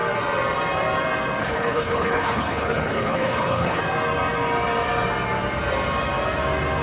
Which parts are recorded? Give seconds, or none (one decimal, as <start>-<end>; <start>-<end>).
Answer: 0.0-1.4; 3.8-6.8